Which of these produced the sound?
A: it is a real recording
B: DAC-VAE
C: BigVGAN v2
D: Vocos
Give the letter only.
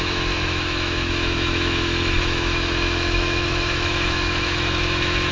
B